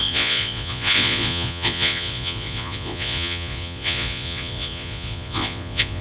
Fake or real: fake